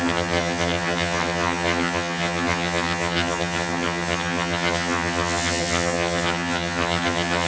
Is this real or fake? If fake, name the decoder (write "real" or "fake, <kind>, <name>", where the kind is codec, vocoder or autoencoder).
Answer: fake, vocoder, HiFi-GAN